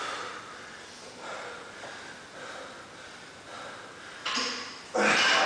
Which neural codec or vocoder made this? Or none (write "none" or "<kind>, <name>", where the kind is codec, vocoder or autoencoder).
none